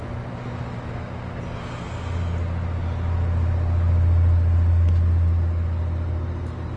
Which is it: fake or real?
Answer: real